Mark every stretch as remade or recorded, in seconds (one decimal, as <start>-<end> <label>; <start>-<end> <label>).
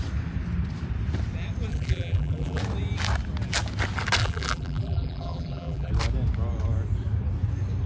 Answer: 0.0-1.7 recorded; 1.7-2.6 remade; 2.6-4.2 recorded; 4.2-5.9 remade; 5.9-7.9 recorded